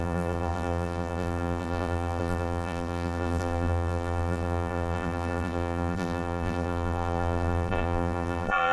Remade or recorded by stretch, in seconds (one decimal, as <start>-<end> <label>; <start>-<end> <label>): 0.0-8.7 remade